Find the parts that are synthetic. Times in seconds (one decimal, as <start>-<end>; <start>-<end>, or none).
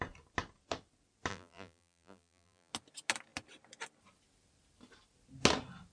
1.3-2.7